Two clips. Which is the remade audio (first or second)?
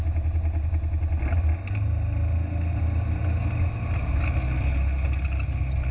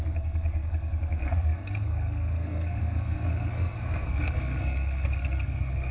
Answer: second